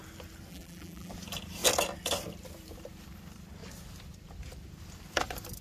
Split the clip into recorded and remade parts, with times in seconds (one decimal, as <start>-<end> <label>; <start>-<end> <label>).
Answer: 0.0-0.5 recorded; 0.5-1.1 remade; 1.1-5.6 recorded